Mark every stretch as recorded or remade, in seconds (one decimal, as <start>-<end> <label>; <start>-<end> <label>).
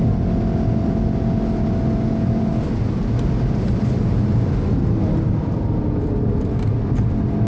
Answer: 0.0-7.5 recorded